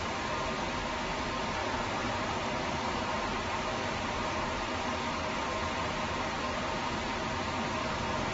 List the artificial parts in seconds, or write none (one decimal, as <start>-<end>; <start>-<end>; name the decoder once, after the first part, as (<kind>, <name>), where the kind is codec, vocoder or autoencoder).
none